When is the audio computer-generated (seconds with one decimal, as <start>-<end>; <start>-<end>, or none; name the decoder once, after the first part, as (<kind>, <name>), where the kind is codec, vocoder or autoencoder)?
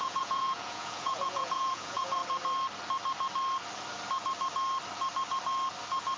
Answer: 0.0-2.2 (vocoder, Vocos)